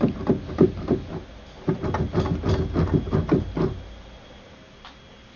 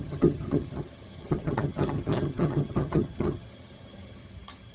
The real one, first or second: first